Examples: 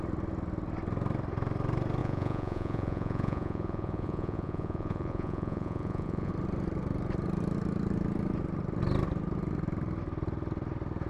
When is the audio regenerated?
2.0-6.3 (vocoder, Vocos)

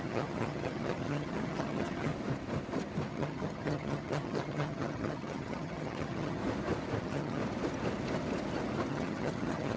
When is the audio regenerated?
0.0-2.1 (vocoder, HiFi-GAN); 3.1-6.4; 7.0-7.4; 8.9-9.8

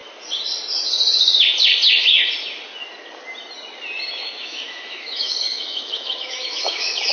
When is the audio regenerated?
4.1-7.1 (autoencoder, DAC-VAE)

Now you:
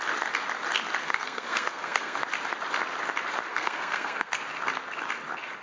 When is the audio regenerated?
1.0-2.2 (codec, SNAC); 3.5-4.4

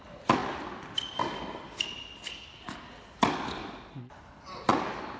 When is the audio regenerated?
none

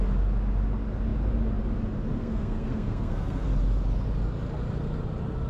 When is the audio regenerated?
2.1-3.5 (codec, SNAC)

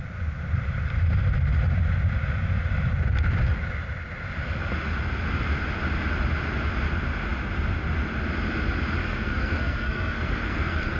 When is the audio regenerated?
9.0-11.0 (codec, SNAC)